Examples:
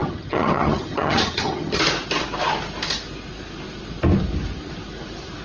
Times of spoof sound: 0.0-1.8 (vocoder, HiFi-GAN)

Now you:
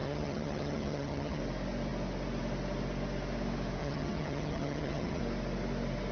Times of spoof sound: 0.0-1.4 (vocoder, HiFi-GAN); 3.8-5.2

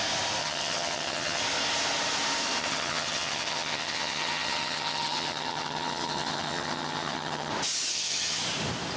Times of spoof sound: 0.4-1.4 (vocoder, HiFi-GAN); 2.6-7.5; 7.9-8.4

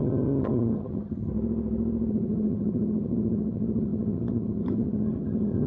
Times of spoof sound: 0.0-1.3 (vocoder, HiFi-GAN); 2.1-5.7

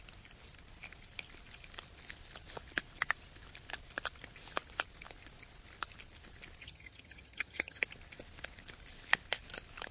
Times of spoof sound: 6.6-7.8 (vocoder, HiFi-GAN)

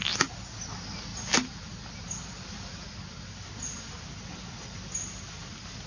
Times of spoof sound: none

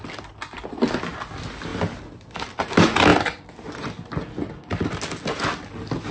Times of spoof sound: none